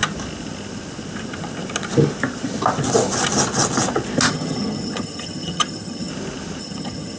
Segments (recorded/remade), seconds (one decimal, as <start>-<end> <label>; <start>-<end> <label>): 0.0-4.3 recorded; 4.3-6.1 remade; 6.1-6.6 recorded; 6.6-7.2 remade